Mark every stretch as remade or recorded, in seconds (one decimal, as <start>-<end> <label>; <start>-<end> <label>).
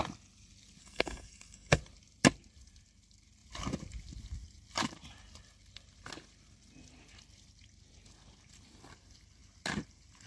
0.0-0.8 recorded; 0.8-1.8 remade; 1.8-10.3 recorded